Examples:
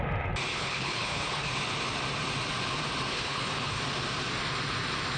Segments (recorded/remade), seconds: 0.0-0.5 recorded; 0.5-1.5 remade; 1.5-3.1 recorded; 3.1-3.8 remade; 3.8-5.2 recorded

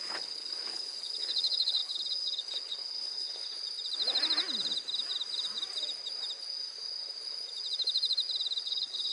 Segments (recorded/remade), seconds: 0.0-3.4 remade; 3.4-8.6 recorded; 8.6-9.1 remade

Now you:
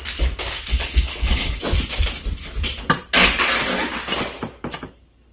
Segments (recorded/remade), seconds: 0.0-0.7 recorded; 0.7-1.6 remade; 1.6-5.3 recorded

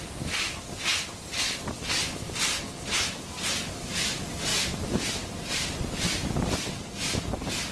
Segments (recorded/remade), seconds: 0.0-7.7 recorded

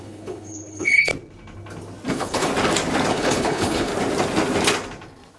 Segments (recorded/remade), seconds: 0.0-1.1 remade; 1.1-2.1 recorded; 2.1-2.5 remade; 2.5-3.1 recorded; 3.1-3.9 remade; 3.9-5.4 recorded

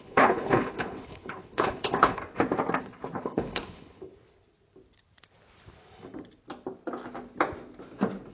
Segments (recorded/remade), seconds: 0.0-2.2 remade; 2.2-2.8 recorded; 2.8-4.1 remade; 4.1-8.3 recorded

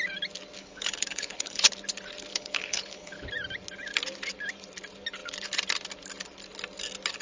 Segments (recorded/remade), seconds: 0.0-0.6 recorded; 0.6-1.7 remade; 1.7-2.3 recorded; 2.3-3.3 remade; 3.3-7.2 recorded

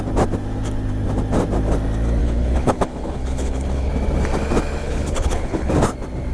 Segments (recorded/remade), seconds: 0.0-2.2 recorded; 2.2-3.9 remade; 3.9-4.8 recorded; 4.8-5.7 remade; 5.7-6.3 recorded